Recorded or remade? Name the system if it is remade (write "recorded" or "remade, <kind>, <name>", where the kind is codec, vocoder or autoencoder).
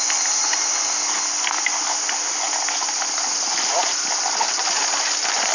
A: recorded